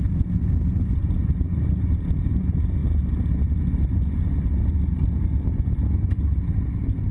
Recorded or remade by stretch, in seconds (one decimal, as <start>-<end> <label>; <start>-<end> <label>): 0.0-7.1 recorded

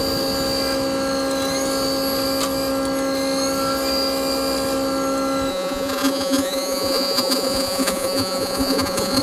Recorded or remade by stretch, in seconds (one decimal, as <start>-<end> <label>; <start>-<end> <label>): 0.0-5.5 recorded; 5.5-9.2 remade

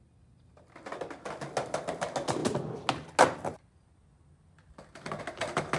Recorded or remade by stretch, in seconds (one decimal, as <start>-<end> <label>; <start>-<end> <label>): 0.0-5.8 recorded

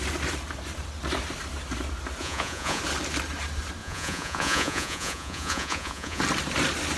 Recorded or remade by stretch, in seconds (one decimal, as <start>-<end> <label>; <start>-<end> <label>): 0.0-2.2 recorded; 2.2-2.8 remade; 2.8-3.8 recorded; 3.8-6.2 remade; 6.2-7.0 recorded